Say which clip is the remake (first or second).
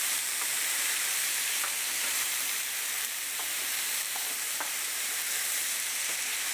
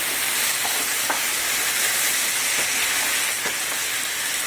first